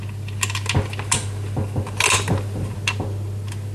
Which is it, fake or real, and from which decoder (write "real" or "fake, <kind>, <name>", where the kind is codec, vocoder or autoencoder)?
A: real